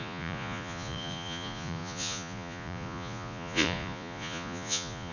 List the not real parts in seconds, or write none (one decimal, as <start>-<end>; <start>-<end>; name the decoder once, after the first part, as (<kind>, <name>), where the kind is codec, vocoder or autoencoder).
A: 0.0-5.1 (vocoder, Vocos)